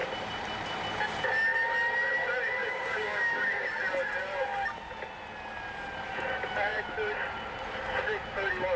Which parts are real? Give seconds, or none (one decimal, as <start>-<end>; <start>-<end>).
0.0-2.6; 3.7-8.8